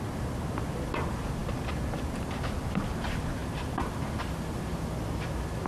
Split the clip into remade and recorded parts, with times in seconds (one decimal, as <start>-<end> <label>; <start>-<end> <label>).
0.0-5.7 recorded